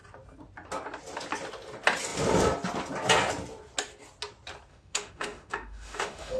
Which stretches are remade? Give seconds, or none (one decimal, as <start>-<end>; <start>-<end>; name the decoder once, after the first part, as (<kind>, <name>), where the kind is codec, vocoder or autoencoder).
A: 4.7-6.4 (autoencoder, DAC-VAE)

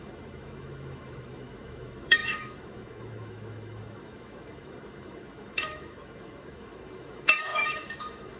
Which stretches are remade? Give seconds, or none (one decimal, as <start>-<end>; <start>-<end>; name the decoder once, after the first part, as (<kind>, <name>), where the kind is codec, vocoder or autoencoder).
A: 0.0-8.4 (autoencoder, DAC-VAE)